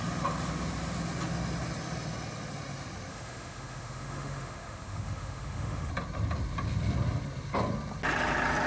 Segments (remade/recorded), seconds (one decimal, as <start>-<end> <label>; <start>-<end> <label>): 0.0-3.1 recorded; 3.1-5.9 remade; 5.9-8.7 recorded